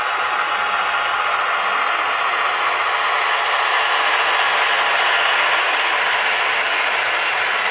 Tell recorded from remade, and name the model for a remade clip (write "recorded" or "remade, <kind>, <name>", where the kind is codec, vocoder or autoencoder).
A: recorded